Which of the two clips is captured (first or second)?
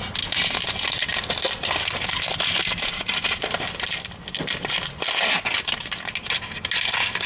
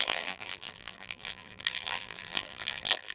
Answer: first